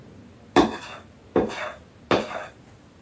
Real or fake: real